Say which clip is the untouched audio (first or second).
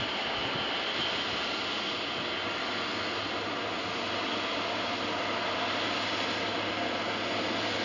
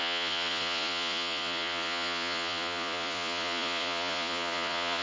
first